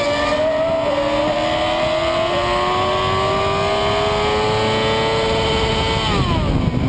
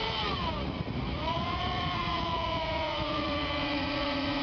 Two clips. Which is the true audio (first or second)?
first